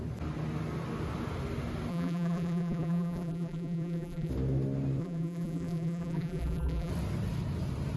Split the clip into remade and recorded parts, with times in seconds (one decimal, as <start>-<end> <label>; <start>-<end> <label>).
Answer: 0.0-1.9 recorded; 1.9-4.3 remade; 4.3-5.0 recorded; 5.0-6.9 remade; 6.9-8.0 recorded